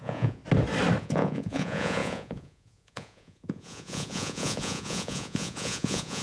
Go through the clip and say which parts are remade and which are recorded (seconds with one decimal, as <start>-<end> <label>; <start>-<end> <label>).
0.0-0.4 remade; 0.4-1.0 recorded; 1.0-6.2 remade